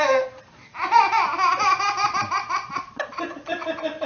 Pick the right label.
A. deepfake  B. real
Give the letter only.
B